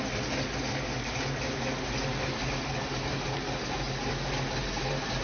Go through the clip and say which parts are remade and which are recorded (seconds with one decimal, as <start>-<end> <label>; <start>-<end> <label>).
0.0-5.2 recorded